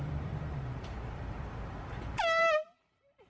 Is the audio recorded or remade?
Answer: remade